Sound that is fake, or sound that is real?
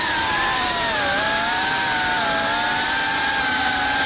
real